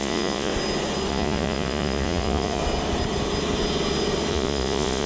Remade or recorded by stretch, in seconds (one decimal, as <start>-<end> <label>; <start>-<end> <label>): 0.0-0.5 remade; 0.5-1.1 recorded; 1.1-2.6 remade; 2.6-4.3 recorded; 4.3-5.1 remade